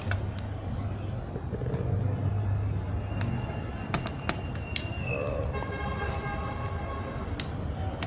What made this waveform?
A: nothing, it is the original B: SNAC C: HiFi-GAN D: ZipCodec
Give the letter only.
A